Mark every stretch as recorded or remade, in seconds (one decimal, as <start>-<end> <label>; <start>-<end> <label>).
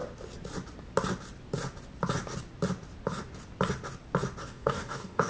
0.0-4.4 recorded; 4.4-5.3 remade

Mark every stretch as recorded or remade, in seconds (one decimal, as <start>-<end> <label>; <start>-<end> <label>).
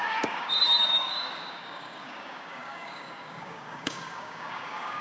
0.0-5.0 remade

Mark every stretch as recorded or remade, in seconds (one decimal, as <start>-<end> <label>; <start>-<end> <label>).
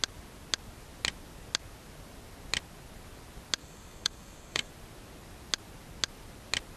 0.0-3.6 recorded; 3.6-4.7 remade; 4.7-6.8 recorded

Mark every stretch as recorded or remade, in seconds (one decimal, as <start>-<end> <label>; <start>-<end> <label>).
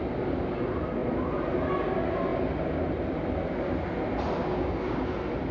0.0-4.4 recorded; 4.4-5.0 remade; 5.0-5.5 recorded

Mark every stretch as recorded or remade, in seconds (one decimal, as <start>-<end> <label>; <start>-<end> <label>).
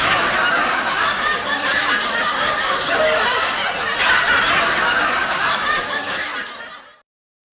0.0-3.6 remade; 3.6-4.6 recorded; 4.6-6.3 remade; 6.3-7.6 recorded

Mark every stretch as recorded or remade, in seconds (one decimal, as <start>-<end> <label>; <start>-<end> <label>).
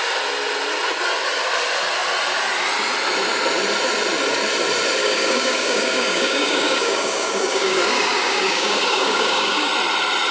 0.0-5.0 recorded; 5.0-9.7 remade; 9.7-10.3 recorded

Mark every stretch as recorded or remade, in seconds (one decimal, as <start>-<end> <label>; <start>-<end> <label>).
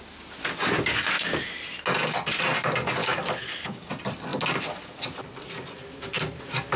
0.0-3.0 recorded; 3.0-3.9 remade; 3.9-6.8 recorded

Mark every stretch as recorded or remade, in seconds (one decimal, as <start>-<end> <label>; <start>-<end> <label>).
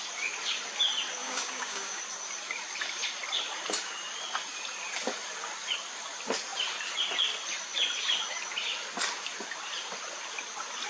0.0-1.2 recorded; 1.2-2.0 remade; 2.0-10.9 recorded